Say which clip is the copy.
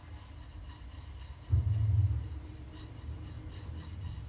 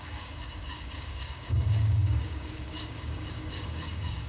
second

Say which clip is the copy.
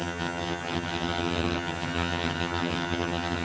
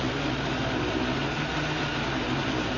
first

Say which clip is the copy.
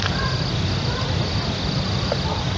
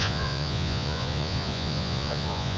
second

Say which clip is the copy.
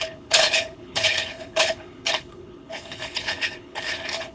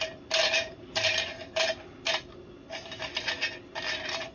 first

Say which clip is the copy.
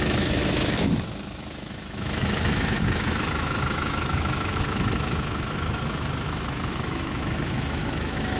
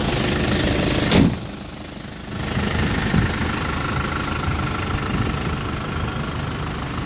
first